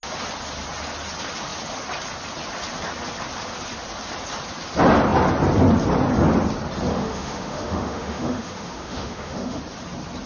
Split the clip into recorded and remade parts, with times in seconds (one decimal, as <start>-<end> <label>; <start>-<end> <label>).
0.0-6.9 recorded; 6.9-9.6 remade; 9.6-10.3 recorded